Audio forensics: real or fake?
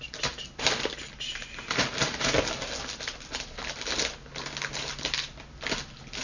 real